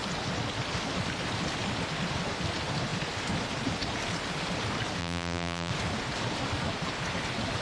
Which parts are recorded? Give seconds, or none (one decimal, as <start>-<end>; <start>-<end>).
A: 0.0-5.0; 5.7-7.6